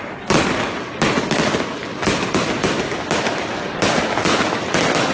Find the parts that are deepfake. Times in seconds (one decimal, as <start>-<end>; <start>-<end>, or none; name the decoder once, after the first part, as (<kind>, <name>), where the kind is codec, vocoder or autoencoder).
none